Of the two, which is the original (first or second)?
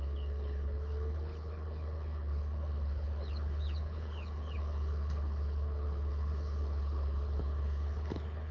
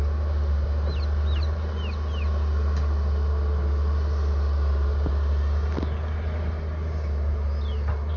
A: second